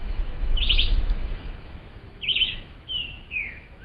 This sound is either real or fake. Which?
fake